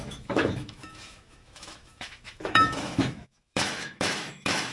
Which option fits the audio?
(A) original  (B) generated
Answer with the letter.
B